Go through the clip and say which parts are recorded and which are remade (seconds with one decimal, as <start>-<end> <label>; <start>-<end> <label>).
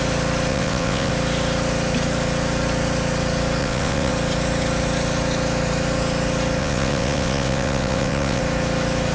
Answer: 0.0-0.5 recorded; 0.5-1.1 remade; 1.1-3.6 recorded; 3.6-4.1 remade; 4.1-6.6 recorded; 6.6-8.4 remade; 8.4-9.1 recorded